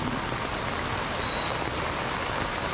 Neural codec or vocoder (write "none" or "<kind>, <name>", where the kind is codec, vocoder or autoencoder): none